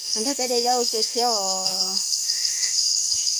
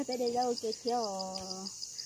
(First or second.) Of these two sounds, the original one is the second